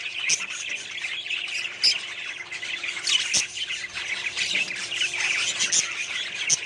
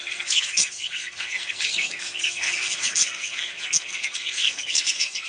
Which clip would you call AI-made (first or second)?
second